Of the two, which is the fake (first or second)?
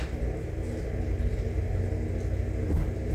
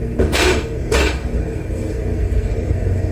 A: second